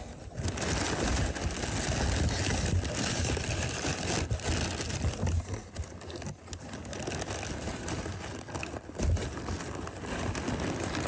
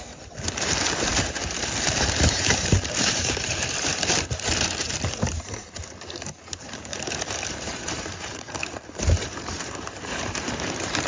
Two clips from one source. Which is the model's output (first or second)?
second